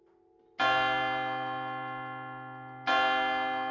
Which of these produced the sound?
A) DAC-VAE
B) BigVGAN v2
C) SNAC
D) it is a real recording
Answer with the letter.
D